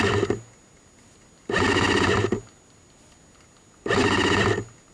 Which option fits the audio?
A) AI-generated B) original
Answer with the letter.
B